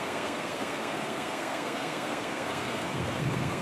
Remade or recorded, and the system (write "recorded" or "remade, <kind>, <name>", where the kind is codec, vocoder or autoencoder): remade, codec, SNAC